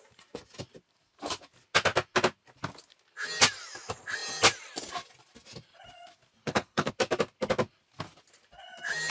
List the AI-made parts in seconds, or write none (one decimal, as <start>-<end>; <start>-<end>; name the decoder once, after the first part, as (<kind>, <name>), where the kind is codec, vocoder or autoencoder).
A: 6.4-6.9 (codec, HILCodec)